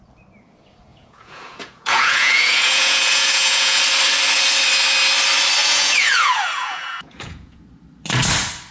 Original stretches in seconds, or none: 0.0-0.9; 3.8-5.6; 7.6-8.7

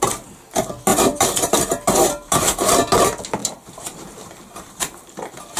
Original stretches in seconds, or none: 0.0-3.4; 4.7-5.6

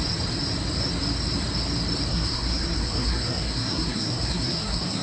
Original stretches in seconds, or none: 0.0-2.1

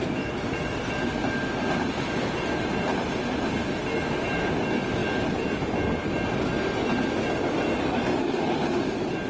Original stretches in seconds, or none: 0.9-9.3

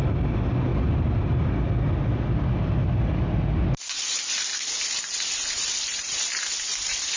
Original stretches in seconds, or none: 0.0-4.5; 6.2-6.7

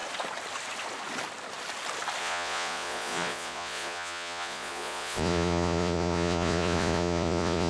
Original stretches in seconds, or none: 0.0-2.2